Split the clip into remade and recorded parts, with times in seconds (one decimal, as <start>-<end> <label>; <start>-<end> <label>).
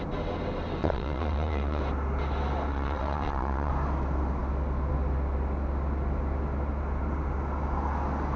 0.0-0.8 recorded; 0.8-1.8 remade; 1.8-2.7 recorded; 2.7-3.7 remade; 3.7-8.4 recorded